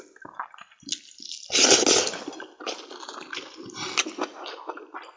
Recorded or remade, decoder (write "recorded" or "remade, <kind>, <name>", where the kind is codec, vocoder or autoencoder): recorded